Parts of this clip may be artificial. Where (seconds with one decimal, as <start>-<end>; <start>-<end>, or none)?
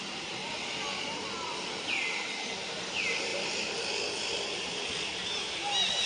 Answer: none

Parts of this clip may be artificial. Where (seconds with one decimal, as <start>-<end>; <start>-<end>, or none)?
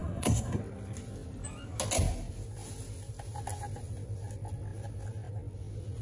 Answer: 0.0-0.6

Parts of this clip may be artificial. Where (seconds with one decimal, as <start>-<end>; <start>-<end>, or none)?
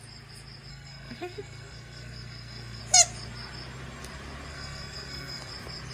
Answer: 0.7-2.8; 4.5-5.5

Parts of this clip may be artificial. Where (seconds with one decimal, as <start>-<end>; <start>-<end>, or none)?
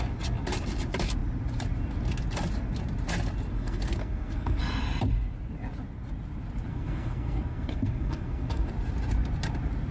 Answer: 3.5-4.6; 6.7-8.7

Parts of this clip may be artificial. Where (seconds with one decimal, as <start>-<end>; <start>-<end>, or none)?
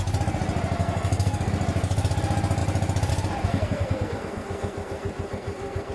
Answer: 0.8-1.5; 3.5-5.9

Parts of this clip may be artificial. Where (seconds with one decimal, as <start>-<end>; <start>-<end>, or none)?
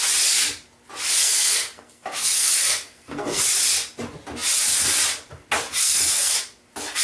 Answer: 1.2-3.4; 5.8-6.4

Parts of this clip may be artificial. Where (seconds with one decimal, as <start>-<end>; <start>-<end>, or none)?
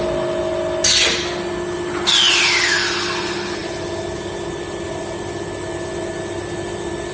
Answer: none